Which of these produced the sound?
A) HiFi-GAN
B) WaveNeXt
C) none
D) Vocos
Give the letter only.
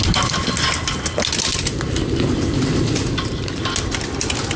C